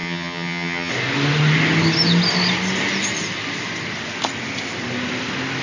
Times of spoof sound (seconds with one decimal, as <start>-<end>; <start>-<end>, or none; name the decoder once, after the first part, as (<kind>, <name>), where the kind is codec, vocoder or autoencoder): 0.0-0.9 (vocoder, HiFi-GAN)

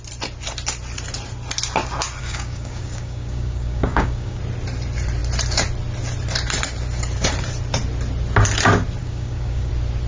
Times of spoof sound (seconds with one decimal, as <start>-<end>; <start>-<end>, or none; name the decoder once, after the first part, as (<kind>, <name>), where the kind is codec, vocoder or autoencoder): 2.2-4.4 (codec, DAC); 9.0-9.7